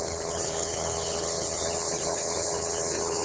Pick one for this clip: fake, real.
fake